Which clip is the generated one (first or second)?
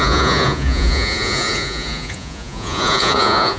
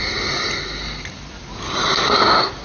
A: first